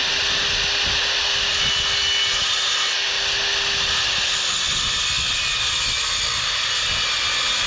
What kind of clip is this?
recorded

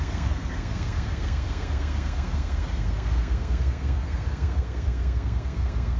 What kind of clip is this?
remade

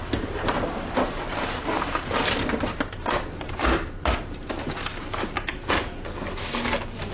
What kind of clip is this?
recorded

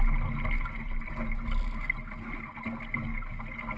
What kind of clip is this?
recorded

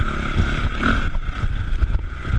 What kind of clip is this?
recorded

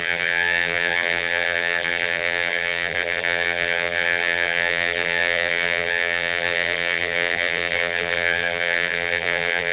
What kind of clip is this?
remade